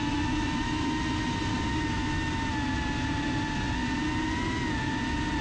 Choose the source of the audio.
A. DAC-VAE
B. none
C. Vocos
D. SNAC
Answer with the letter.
B